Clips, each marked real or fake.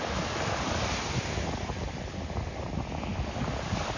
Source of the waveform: real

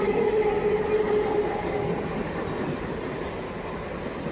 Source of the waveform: real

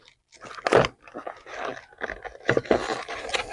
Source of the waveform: real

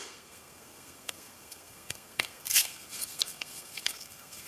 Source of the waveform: fake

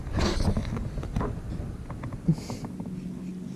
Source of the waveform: real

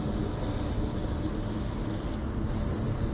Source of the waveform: real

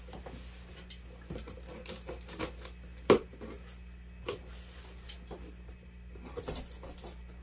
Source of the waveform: real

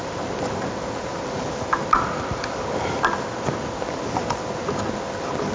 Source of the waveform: real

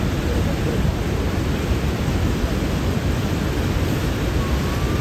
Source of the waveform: real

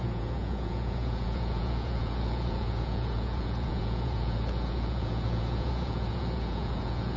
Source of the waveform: fake